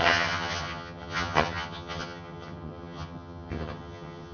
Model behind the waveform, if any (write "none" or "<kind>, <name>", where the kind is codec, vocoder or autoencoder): vocoder, HiFi-GAN